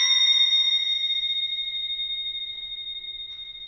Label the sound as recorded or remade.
remade